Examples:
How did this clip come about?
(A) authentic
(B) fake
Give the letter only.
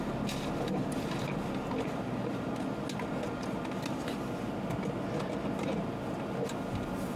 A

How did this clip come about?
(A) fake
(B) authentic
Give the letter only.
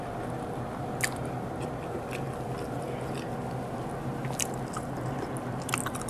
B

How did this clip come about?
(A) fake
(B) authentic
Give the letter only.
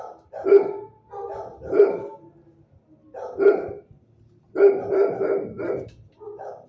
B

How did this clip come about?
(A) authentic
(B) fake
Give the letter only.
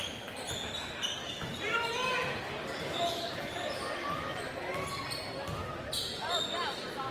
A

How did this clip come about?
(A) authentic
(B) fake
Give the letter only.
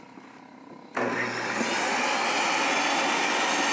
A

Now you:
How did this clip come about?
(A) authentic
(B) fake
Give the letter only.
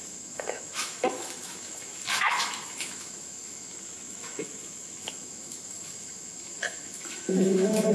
B